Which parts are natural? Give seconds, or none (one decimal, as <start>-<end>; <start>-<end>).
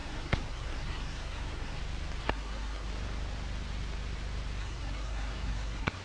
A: 1.8-2.2; 2.9-4.6